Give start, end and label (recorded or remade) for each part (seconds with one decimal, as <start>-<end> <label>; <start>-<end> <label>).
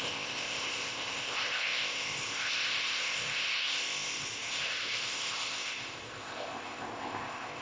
0.0-7.6 remade